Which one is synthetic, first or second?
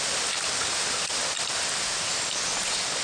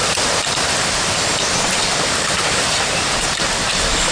second